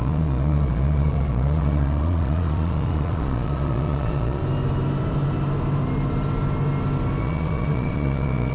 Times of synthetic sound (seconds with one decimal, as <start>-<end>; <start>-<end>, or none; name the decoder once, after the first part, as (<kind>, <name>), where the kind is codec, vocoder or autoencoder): 0.0-4.4 (vocoder, Vocos); 7.2-8.5